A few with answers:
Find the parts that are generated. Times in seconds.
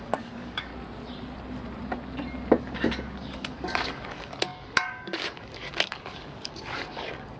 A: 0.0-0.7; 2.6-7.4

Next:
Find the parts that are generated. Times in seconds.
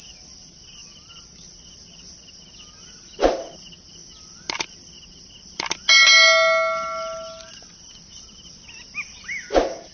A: none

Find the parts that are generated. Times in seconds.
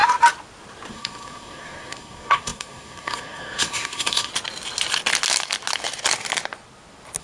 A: 0.9-4.3